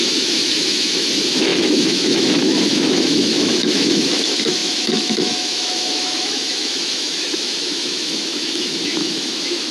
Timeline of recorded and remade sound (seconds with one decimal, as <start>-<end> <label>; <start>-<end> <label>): 0.0-9.7 remade